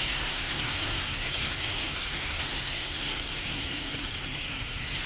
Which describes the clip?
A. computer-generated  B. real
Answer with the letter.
A